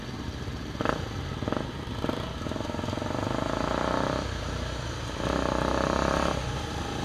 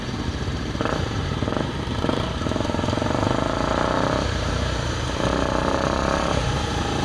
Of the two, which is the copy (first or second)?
second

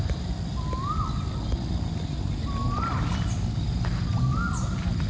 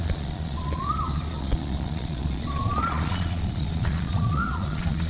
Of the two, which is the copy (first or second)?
second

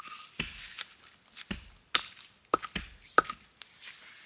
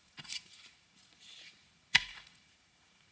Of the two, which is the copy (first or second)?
second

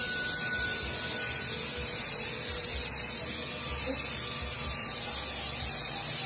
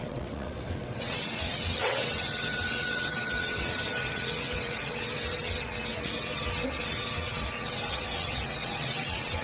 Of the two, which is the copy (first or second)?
second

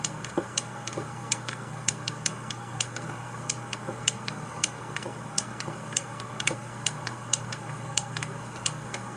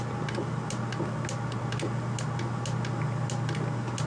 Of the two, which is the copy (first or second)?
first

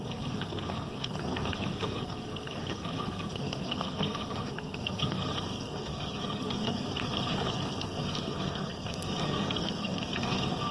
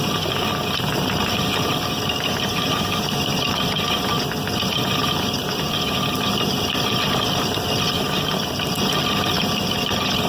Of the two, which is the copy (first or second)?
first